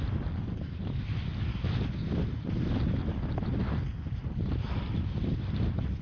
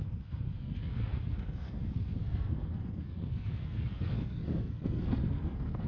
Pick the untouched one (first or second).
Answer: first